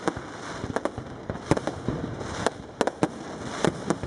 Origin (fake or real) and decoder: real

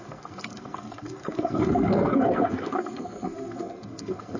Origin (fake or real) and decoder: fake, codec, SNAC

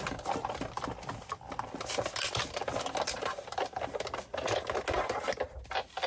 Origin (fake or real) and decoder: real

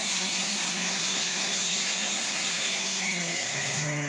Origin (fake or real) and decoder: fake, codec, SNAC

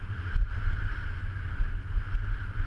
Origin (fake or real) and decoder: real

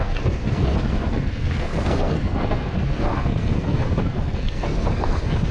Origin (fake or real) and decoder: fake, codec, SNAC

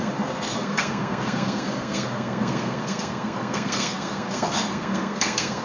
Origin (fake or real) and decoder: fake, codec, SNAC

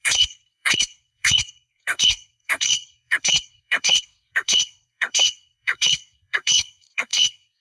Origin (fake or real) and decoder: fake, codec, SNAC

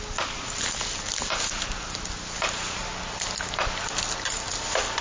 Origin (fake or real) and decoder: real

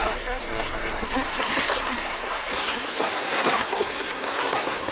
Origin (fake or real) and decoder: fake, codec, SNAC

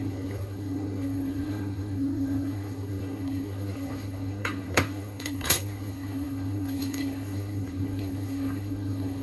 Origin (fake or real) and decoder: fake, codec, SNAC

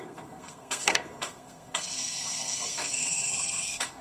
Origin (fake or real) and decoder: fake, codec, SNAC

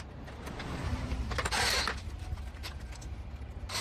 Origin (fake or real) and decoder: real